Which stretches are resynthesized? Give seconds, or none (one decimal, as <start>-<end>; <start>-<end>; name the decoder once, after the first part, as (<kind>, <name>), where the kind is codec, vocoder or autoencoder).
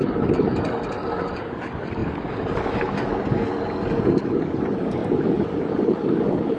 0.0-6.6 (codec, DAC)